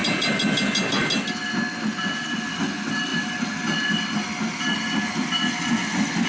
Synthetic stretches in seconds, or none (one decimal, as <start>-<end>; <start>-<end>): none